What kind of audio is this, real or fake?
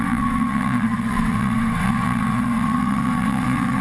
fake